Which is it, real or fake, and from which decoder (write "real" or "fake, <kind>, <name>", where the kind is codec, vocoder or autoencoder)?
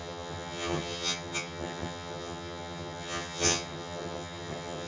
fake, vocoder, HiFi-GAN